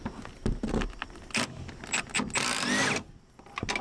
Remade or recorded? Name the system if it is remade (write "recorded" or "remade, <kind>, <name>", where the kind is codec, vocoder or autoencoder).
recorded